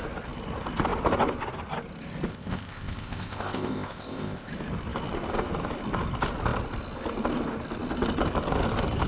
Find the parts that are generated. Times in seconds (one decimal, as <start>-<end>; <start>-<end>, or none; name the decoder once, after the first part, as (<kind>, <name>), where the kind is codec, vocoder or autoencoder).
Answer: 2.3-4.5 (codec, ZipCodec)